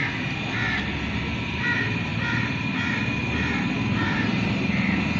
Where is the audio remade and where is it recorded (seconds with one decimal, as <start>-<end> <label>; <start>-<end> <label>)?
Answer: 0.0-2.1 recorded; 2.1-5.2 remade